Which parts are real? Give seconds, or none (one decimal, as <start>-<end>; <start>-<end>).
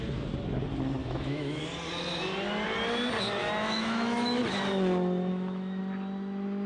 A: 0.0-1.0; 1.6-3.4; 4.4-5.3; 5.8-6.7